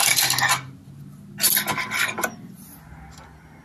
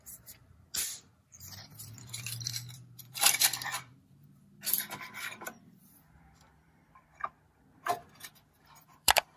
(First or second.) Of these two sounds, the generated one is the second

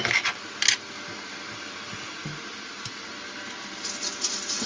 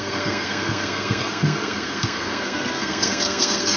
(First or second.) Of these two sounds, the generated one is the second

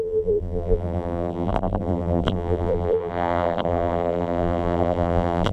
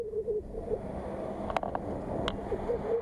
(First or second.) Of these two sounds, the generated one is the first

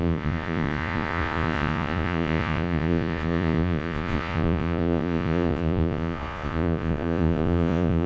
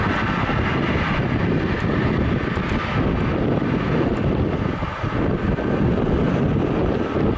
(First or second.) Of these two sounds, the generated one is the first